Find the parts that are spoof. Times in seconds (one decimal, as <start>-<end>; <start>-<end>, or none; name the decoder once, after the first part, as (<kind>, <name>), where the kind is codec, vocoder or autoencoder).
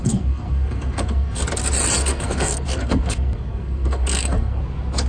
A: 0.0-1.4 (codec, SNAC); 2.0-4.6